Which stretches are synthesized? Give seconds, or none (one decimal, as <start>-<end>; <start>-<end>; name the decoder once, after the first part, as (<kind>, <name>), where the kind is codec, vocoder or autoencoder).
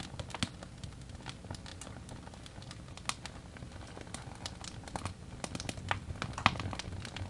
none